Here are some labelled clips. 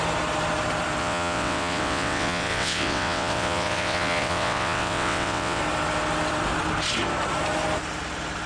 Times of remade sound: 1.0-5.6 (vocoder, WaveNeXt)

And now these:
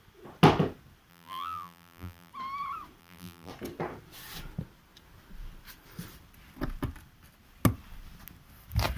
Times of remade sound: 1.1-2.3 (vocoder, BigVGAN v2); 3.0-3.5

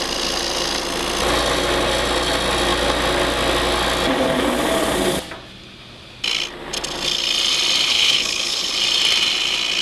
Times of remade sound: 7.9-8.7 (codec, HILCodec)

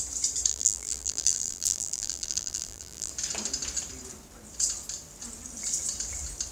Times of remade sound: 0.5-3.1 (vocoder, BigVGAN v2)

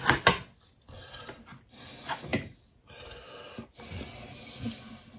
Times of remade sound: none